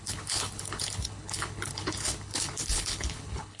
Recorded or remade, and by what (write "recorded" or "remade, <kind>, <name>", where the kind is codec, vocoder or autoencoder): remade, codec, HILCodec